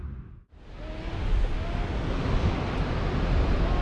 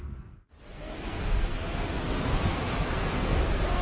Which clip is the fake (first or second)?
second